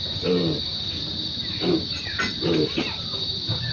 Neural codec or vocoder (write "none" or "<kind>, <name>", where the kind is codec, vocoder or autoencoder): none